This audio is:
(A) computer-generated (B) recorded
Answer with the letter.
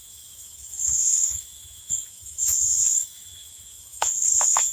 A